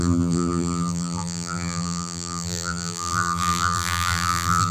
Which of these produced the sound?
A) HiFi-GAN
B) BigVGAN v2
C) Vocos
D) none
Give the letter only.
B